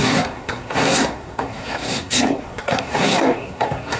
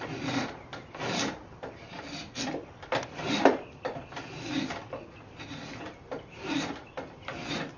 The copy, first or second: first